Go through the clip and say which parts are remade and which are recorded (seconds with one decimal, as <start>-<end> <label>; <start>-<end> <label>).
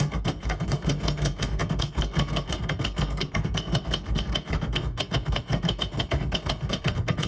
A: 0.0-7.3 remade